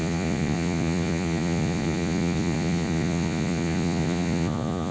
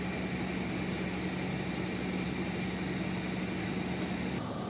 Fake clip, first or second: first